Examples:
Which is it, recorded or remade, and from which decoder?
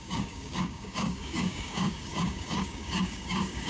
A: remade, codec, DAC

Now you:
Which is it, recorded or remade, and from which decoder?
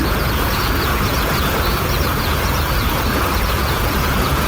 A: remade, vocoder, Vocos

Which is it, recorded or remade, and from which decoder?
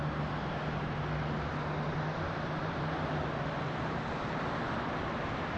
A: remade, vocoder, BigVGAN v2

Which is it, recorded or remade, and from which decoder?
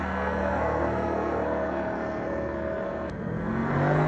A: remade, codec, SNAC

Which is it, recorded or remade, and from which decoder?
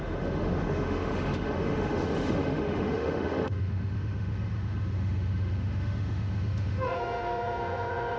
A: remade, autoencoder, DAC-VAE